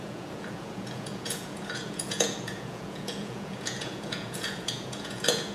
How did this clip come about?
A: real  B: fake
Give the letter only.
B